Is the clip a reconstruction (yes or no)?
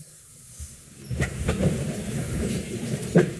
yes